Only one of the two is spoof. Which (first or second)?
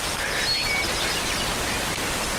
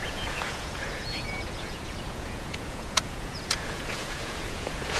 second